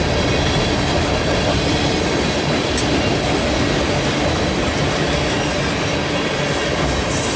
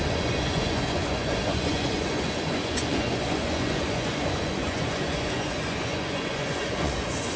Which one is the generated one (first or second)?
second